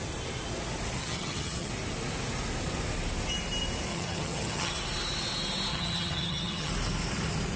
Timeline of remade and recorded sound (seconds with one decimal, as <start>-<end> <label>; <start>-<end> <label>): 0.0-1.0 recorded; 1.0-1.7 remade; 1.7-3.9 recorded; 3.9-4.7 remade; 4.7-5.7 recorded; 5.7-6.7 remade; 6.7-7.6 recorded